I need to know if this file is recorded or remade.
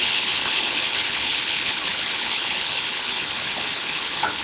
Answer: remade